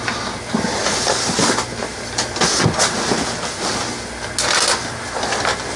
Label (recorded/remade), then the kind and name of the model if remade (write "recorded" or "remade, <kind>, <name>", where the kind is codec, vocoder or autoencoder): recorded